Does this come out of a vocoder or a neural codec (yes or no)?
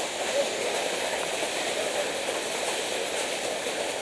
no